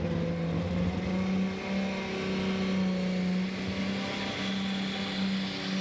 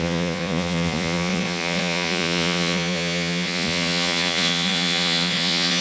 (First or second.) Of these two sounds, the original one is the first